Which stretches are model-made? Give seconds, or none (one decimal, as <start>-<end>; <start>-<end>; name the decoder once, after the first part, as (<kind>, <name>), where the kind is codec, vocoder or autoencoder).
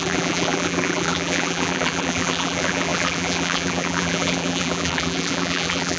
0.0-6.0 (vocoder, BigVGAN v2)